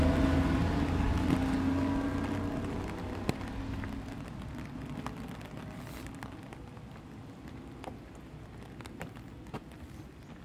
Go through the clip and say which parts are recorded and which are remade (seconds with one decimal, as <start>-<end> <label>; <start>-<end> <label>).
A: 0.0-10.4 recorded

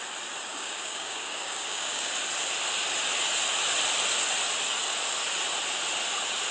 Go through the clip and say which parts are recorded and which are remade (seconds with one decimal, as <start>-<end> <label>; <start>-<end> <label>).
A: 0.0-0.5 recorded; 0.5-2.1 remade; 2.1-6.5 recorded

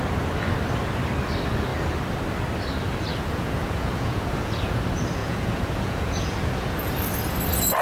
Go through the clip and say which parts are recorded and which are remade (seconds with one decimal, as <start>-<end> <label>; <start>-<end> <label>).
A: 0.0-3.1 recorded; 3.1-4.8 remade; 4.8-5.2 recorded; 5.2-6.9 remade; 6.9-7.8 recorded

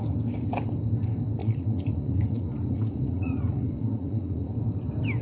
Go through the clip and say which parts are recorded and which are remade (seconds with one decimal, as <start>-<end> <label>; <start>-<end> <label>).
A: 0.0-1.4 recorded; 1.4-4.5 remade; 4.5-5.2 recorded

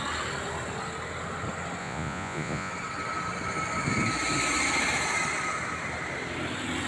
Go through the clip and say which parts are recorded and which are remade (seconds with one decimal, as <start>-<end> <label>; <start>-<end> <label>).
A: 0.0-1.8 recorded; 1.8-2.7 remade; 2.7-6.9 recorded

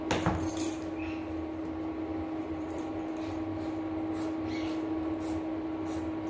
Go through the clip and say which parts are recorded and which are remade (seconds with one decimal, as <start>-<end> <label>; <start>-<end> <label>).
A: 0.0-2.4 recorded; 2.4-2.9 remade; 2.9-6.3 recorded

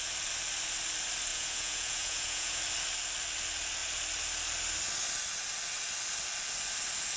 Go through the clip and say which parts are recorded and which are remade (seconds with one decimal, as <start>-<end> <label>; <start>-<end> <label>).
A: 0.0-1.3 recorded; 1.3-2.6 remade; 2.6-7.2 recorded

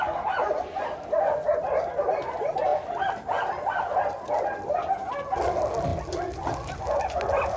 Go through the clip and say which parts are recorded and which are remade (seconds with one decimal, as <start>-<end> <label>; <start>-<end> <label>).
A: 0.0-7.6 recorded